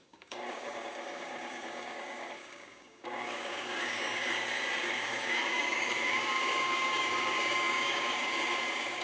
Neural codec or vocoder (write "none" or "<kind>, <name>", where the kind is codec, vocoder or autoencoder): codec, DAC